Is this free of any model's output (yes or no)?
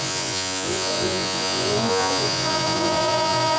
no